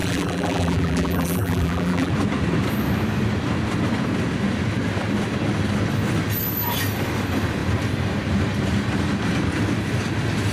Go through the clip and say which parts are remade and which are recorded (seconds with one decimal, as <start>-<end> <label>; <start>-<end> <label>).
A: 0.0-2.1 remade; 2.1-10.5 recorded